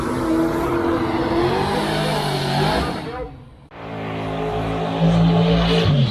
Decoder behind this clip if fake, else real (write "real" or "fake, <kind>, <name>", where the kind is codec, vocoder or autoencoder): real